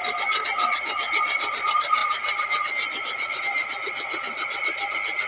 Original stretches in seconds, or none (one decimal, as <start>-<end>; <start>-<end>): 0.0-5.3